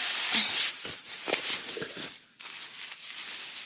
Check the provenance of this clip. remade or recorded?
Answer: recorded